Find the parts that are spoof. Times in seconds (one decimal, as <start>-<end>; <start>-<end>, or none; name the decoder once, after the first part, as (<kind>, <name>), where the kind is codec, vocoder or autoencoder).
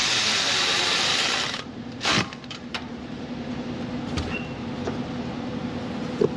0.0-3.8 (vocoder, BigVGAN v2)